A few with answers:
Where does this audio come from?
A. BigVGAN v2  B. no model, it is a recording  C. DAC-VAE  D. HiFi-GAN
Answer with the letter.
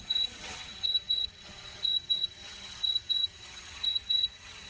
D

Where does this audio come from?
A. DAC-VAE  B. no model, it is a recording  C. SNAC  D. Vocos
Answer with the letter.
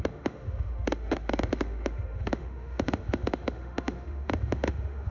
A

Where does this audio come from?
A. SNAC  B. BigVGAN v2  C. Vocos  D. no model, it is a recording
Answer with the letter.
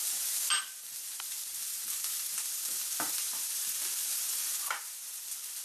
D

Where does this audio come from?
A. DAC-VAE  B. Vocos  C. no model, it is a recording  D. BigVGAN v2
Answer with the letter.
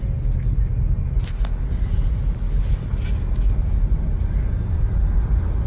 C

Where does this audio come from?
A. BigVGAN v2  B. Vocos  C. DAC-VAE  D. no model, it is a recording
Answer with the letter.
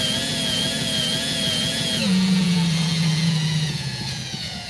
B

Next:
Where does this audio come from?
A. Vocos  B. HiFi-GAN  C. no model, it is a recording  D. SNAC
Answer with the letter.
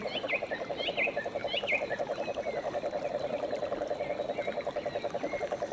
C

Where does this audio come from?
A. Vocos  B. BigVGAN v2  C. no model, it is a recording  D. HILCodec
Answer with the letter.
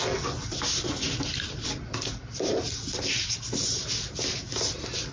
C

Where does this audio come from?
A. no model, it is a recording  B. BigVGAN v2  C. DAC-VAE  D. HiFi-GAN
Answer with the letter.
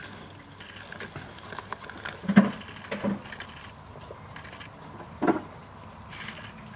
A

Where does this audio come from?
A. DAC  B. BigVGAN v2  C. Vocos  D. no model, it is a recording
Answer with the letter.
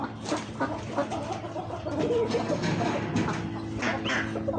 D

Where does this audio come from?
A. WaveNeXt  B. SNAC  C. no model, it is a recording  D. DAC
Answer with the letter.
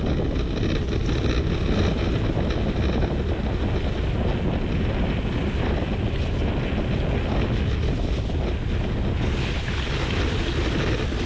C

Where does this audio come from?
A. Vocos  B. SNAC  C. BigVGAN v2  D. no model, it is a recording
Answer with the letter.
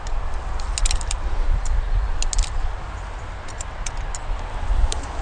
D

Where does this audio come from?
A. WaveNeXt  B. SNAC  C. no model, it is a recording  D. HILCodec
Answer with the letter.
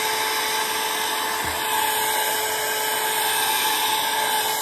C